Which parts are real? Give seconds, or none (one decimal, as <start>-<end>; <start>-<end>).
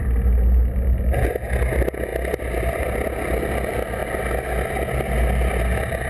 0.0-6.1